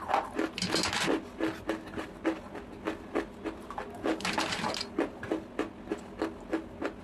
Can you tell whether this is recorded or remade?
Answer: recorded